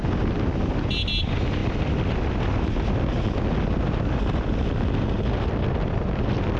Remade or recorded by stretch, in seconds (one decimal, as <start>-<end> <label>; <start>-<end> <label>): 0.0-6.6 recorded